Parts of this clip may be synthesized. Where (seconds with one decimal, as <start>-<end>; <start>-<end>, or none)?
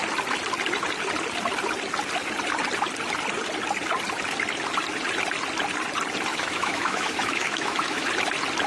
6.3-8.1